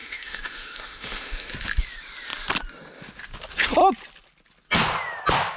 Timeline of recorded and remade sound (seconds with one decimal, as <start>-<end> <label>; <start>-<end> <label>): 0.0-1.5 remade; 1.5-5.6 recorded